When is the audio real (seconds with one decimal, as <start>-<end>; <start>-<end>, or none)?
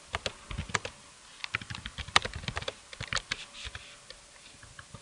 0.0-5.0